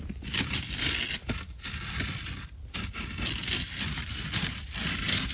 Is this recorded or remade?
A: recorded